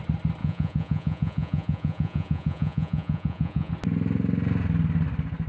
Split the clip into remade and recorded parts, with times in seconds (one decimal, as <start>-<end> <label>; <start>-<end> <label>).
0.0-0.4 recorded; 0.4-3.7 remade; 3.7-5.5 recorded